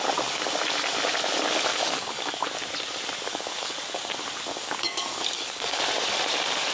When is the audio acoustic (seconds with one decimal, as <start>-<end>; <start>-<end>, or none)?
0.0-1.7; 2.5-3.3; 4.1-4.5; 5.8-6.7